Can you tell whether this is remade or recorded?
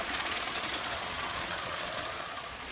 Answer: remade